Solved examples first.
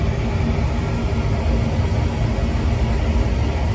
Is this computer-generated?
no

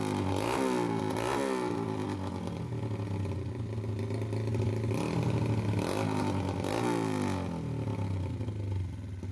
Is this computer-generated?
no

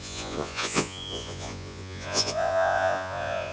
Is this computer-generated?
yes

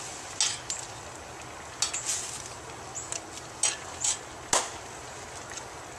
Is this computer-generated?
no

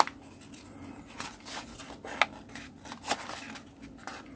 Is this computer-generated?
no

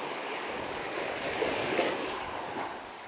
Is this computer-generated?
yes